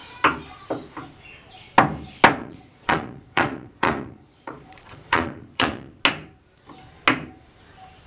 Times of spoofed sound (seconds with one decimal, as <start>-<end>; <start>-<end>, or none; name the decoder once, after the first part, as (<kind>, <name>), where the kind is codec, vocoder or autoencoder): 2.4-6.0 (vocoder, Vocos)